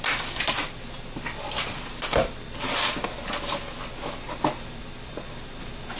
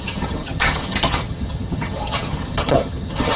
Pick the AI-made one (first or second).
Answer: second